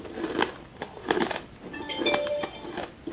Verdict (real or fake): real